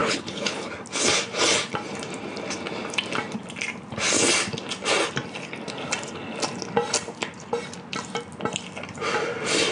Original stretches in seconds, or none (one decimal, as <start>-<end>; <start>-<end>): 0.7-9.7